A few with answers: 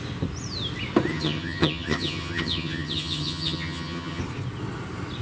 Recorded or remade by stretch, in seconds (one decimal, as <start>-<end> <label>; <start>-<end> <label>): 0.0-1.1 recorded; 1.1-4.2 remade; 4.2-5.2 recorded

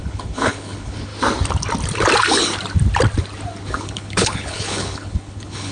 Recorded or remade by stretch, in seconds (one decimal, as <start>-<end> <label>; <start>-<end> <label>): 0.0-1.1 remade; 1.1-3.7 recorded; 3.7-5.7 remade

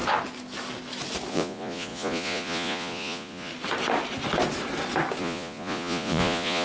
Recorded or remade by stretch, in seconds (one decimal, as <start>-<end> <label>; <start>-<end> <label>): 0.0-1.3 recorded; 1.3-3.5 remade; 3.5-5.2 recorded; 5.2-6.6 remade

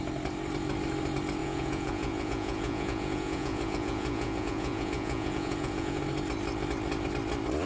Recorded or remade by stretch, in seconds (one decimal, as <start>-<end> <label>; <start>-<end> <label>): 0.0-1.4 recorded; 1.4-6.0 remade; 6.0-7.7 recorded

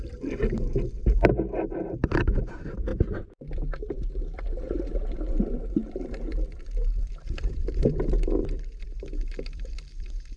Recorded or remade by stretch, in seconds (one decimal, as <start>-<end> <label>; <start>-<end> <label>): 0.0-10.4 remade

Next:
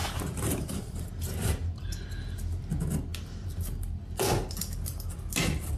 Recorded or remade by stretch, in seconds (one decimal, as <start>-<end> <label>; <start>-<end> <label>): 0.0-1.9 remade; 1.9-5.8 recorded

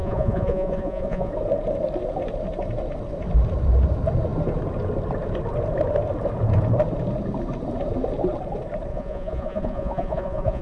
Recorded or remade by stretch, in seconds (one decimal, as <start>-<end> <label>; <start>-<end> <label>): 0.0-1.3 remade; 1.3-8.9 recorded; 8.9-10.6 remade